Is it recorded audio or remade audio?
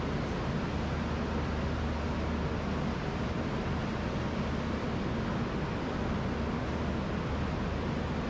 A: recorded